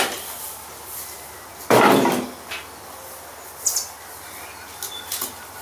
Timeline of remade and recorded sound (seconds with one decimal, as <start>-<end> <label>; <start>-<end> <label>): 0.0-5.6 recorded